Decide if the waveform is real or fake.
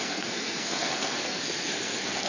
fake